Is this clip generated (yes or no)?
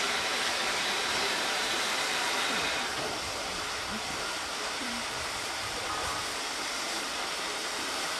yes